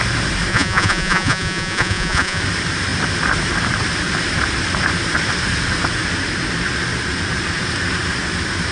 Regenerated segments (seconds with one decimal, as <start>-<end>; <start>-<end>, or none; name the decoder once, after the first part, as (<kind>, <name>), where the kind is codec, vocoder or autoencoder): 0.5-2.4 (vocoder, Vocos)